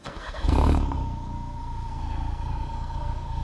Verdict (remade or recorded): remade